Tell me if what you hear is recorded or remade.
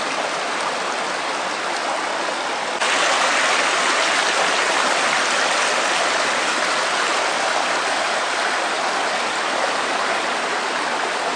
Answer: recorded